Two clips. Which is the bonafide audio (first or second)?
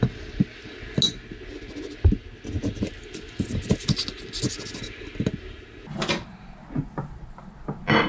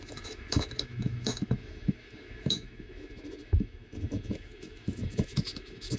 first